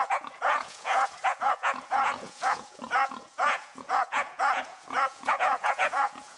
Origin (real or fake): fake